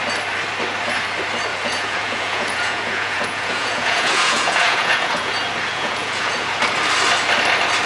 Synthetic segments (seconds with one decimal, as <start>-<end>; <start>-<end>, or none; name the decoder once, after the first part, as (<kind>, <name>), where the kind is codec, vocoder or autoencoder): 1.5-5.3 (vocoder, Vocos); 5.7-6.6